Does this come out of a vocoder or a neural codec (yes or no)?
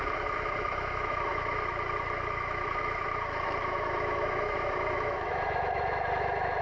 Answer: yes